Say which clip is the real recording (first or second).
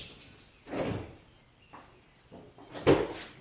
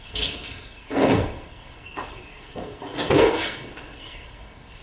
first